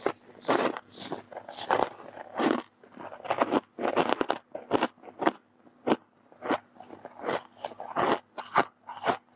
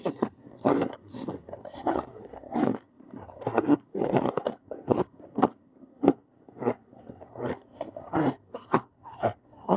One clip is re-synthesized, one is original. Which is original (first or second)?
first